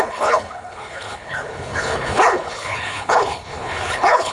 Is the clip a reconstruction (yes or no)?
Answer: yes